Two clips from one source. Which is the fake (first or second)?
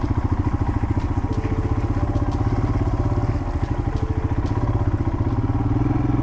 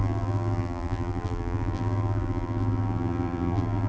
second